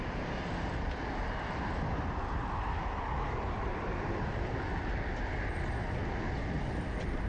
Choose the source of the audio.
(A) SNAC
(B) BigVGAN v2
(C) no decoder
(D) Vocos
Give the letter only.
C